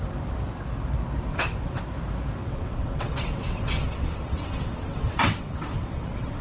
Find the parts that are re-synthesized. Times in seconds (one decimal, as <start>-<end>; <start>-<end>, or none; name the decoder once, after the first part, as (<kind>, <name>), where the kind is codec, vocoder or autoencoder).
1.3-1.8 (vocoder, WaveNeXt); 2.4-6.4